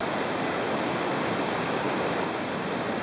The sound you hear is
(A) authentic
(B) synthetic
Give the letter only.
A